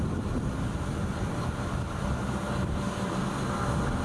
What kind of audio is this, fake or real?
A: real